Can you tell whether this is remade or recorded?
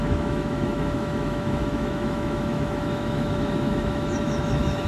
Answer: remade